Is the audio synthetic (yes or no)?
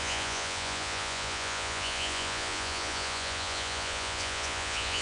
yes